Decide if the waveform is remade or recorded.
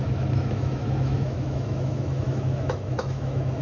remade